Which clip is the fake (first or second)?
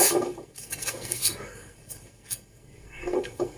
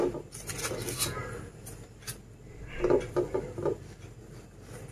first